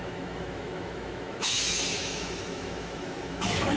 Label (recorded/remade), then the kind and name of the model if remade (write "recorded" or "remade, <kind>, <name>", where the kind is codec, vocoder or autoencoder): remade, autoencoder, DAC-VAE